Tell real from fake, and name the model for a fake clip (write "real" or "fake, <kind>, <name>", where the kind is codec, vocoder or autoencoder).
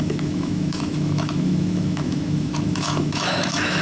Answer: fake, autoencoder, DAC-VAE